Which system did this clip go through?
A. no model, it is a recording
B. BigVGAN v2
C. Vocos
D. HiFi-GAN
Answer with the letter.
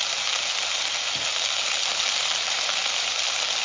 A